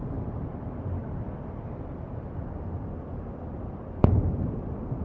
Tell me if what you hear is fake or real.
real